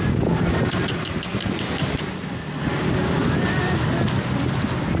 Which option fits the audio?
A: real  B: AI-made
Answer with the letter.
A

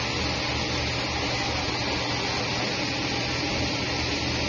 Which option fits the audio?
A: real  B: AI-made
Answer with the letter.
A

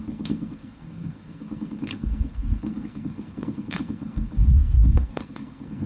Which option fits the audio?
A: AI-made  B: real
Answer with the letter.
A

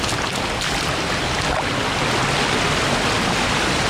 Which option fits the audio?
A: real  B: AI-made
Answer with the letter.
A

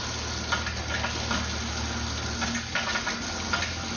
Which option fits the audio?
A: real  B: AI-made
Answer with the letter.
A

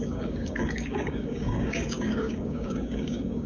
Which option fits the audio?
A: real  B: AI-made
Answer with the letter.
B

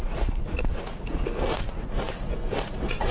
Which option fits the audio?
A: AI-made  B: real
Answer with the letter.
A